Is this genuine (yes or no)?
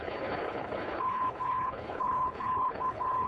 no